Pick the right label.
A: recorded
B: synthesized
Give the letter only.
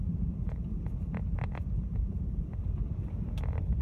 A